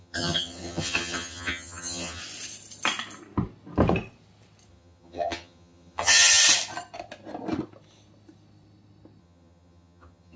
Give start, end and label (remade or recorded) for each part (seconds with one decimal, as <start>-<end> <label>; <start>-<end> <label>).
0.0-2.2 remade; 2.2-4.7 recorded; 4.7-6.4 remade; 6.4-9.2 recorded; 9.2-10.4 remade